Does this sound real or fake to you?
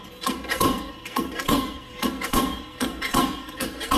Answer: fake